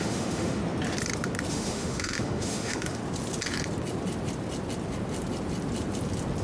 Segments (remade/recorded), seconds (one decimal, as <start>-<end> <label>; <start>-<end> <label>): 0.0-0.6 remade; 0.6-1.5 recorded; 1.5-3.0 remade; 3.0-6.4 recorded